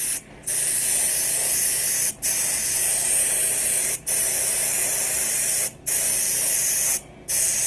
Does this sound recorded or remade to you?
recorded